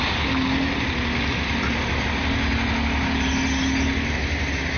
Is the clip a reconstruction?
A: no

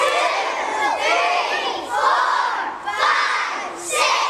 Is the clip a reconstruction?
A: no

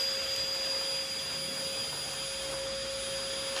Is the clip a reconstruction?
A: no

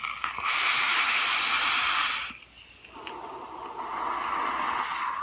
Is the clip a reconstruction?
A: no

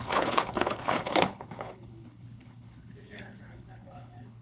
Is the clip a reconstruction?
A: yes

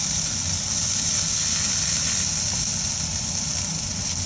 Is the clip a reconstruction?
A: no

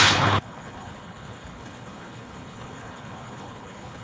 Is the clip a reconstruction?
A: yes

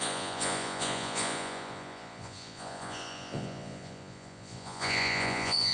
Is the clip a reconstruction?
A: yes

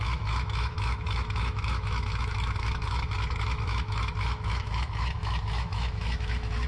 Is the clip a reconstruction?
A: yes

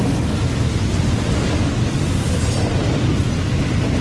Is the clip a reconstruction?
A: no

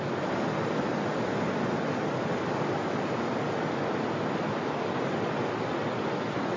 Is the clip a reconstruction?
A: no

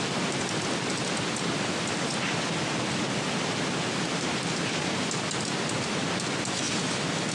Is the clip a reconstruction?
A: no